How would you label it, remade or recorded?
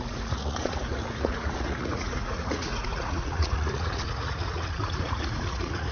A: remade